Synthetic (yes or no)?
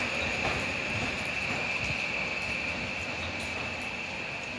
no